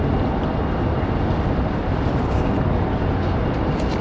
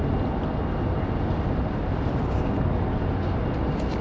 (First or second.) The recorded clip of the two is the second